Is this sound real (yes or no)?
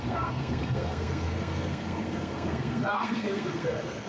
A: no